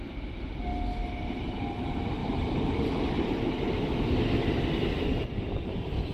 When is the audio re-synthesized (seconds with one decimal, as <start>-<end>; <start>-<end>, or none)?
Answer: 2.2-3.7